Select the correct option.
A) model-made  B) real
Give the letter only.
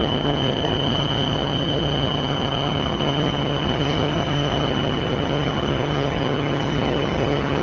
A